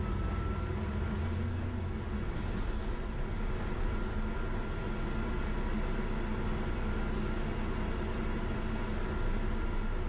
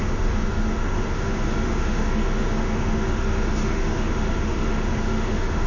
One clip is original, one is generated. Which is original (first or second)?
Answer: first